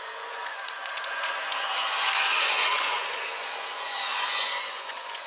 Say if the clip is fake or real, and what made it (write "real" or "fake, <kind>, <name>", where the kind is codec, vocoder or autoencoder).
fake, vocoder, Vocos